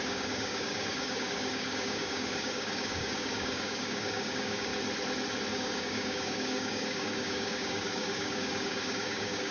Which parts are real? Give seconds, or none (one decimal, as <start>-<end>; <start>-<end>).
4.7-5.5